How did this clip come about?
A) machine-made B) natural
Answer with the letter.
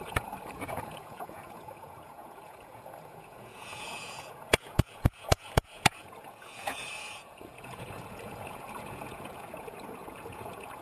A